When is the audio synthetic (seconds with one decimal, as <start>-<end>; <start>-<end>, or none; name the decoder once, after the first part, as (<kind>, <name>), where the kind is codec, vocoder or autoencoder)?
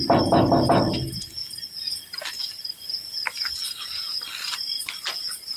none